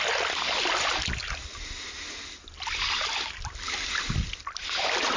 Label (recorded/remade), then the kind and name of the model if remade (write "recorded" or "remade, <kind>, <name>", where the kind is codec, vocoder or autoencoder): recorded